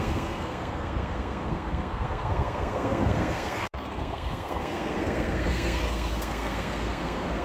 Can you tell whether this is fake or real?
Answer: fake